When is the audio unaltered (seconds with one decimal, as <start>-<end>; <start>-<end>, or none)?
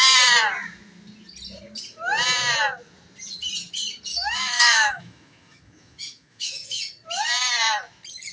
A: 0.0-4.1; 6.8-8.3